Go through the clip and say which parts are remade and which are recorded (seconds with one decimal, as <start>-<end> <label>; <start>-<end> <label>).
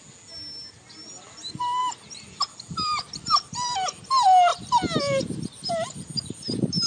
0.0-6.9 recorded